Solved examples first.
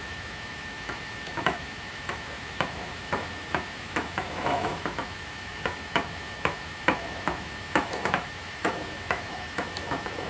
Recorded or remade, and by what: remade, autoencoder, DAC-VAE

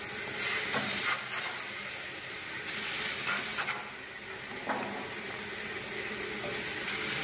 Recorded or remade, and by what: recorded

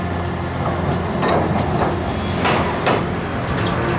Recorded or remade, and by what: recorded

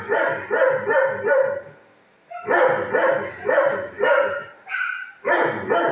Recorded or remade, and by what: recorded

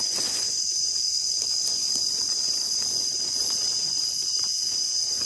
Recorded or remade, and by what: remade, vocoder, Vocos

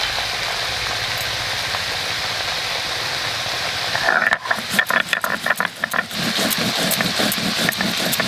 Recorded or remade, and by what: recorded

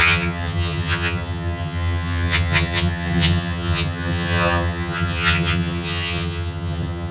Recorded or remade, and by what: remade, vocoder, HiFi-GAN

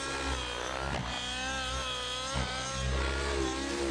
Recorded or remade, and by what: recorded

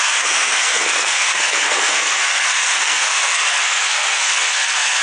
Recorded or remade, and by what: remade, codec, SNAC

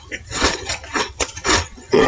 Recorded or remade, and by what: remade, vocoder, WaveNeXt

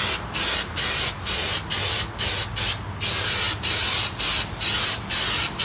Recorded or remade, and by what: recorded